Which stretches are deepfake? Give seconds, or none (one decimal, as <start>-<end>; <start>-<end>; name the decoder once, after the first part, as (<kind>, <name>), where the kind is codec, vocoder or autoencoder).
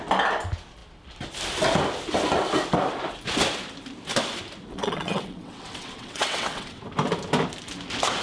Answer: 4.7-6.8 (vocoder, WaveNeXt)